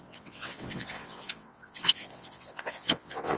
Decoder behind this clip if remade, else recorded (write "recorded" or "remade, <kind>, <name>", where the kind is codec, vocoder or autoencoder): remade, vocoder, WaveNeXt